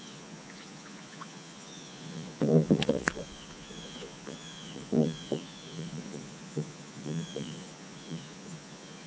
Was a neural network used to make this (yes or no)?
yes